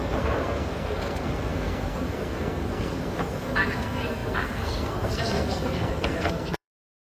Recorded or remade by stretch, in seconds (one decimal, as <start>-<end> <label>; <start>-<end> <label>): 0.0-7.0 remade